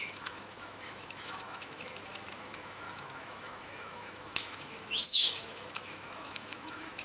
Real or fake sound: fake